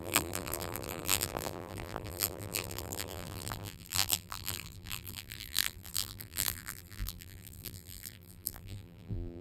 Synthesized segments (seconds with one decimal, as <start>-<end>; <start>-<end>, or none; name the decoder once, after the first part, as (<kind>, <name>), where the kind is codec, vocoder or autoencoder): 0.0-9.4 (vocoder, BigVGAN v2)